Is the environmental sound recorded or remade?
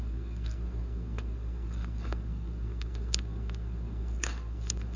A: remade